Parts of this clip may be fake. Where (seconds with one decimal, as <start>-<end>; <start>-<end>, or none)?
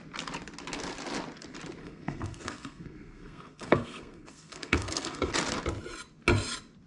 1.8-5.3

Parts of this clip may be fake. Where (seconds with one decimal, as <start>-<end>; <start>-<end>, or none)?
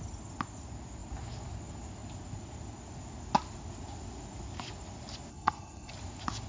5.3-5.9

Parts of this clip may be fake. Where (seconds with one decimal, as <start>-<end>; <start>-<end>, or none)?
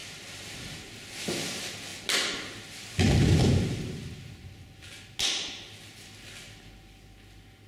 0.0-0.8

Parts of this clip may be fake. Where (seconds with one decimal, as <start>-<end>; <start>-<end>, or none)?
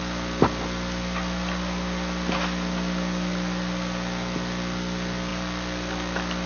none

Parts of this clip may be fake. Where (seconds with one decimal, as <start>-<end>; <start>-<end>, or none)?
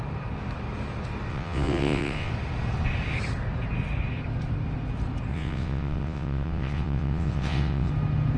1.3-2.3; 5.3-7.9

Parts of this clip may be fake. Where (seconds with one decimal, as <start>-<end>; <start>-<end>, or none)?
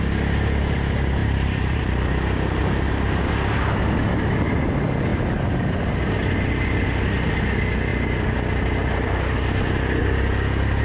1.2-1.9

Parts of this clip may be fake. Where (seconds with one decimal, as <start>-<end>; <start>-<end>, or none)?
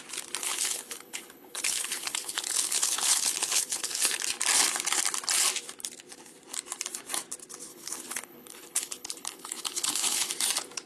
0.4-4.2; 7.7-10.3